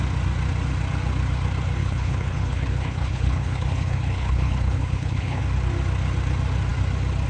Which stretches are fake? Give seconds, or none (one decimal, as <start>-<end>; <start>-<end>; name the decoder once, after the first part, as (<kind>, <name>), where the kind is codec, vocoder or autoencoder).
1.8-5.4 (codec, HILCodec)